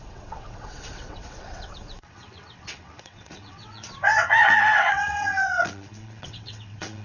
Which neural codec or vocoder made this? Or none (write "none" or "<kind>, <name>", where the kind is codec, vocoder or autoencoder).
vocoder, WaveNeXt